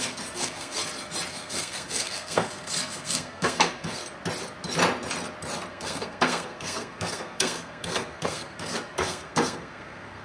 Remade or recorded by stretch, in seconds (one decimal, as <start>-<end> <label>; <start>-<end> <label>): 0.0-0.8 remade; 0.8-1.3 recorded; 1.3-4.0 remade; 4.0-5.7 recorded; 5.7-10.2 remade